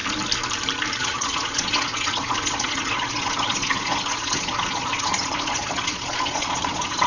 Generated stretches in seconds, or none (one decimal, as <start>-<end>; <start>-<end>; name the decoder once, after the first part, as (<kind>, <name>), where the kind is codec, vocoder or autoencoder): 1.0-7.1 (vocoder, Vocos)

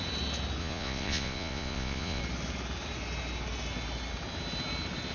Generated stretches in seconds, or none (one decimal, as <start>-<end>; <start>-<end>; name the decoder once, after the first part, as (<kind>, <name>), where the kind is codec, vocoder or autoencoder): 0.6-2.2 (vocoder, Vocos)

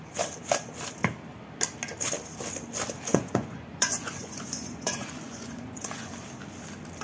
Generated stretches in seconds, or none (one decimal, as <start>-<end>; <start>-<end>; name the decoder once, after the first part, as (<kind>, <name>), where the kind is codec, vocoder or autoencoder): 3.1-6.1 (vocoder, Vocos)

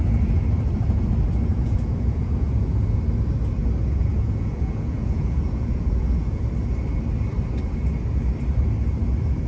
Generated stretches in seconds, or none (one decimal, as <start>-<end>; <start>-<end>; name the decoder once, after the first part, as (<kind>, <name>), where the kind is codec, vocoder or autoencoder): 1.5-2.8 (vocoder, Vocos); 4.1-6.4

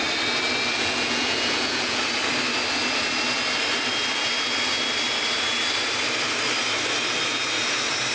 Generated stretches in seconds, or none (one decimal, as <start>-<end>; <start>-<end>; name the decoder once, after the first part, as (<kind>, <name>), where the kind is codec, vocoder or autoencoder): 0.7-2.0 (vocoder, Vocos)